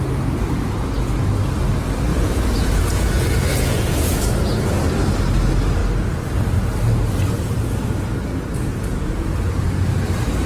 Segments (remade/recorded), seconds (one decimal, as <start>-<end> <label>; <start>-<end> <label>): 0.0-2.1 recorded; 2.1-4.2 remade; 4.2-8.7 recorded; 8.7-9.5 remade; 9.5-10.5 recorded